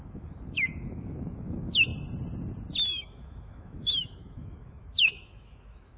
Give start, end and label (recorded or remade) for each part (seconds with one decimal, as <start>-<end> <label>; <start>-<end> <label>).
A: 0.0-1.9 remade; 1.9-2.9 recorded; 2.9-6.0 remade